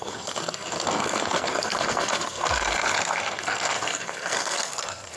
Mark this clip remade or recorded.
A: remade